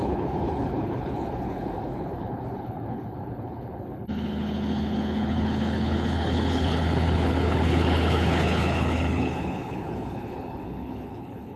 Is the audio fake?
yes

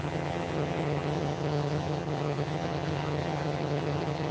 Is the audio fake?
yes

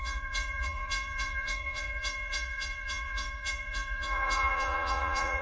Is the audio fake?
yes